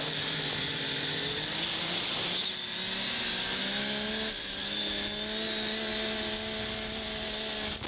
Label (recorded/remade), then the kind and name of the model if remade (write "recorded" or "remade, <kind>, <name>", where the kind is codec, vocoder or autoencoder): recorded